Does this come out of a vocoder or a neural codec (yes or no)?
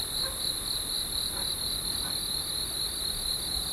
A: no